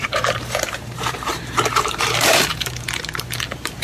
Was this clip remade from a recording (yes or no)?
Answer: yes